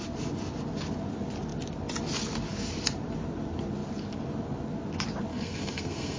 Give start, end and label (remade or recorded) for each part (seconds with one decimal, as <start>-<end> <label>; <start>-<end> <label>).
0.0-5.3 recorded; 5.3-6.2 remade